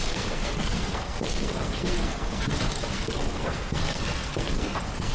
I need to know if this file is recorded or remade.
remade